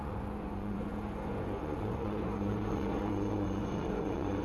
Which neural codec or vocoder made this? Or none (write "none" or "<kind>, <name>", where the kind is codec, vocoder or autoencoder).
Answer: vocoder, Vocos